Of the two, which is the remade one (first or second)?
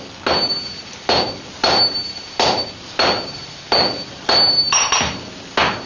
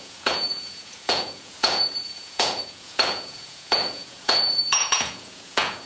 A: second